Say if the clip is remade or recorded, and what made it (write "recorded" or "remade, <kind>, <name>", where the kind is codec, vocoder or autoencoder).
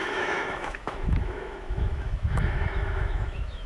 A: remade, autoencoder, DAC-VAE